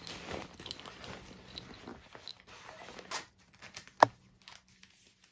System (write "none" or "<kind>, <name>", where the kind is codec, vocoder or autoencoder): none